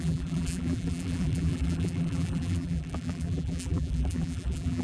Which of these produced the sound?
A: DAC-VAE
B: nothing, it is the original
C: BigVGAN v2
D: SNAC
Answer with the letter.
C